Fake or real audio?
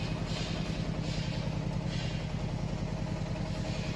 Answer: real